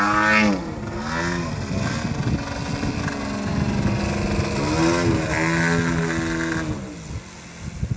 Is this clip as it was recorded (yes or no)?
yes